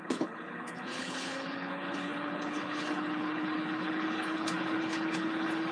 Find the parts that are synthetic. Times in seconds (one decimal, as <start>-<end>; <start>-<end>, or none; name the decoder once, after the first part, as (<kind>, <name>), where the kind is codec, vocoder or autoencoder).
0.0-5.7 (codec, HILCodec)